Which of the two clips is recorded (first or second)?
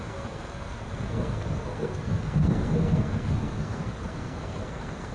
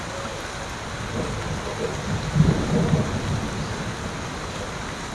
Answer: second